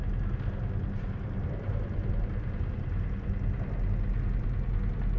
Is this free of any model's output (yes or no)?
yes